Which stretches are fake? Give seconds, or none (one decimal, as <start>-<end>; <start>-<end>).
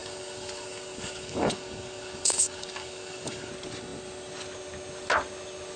0.0-3.5